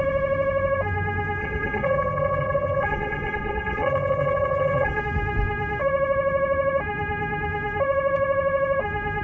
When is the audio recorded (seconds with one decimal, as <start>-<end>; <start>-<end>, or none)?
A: 0.0-1.4; 5.0-9.2